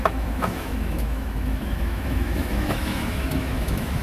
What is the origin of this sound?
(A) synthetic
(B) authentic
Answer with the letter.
A